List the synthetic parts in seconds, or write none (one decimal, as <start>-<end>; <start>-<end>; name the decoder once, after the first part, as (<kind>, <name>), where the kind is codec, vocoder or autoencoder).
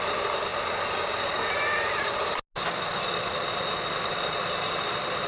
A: none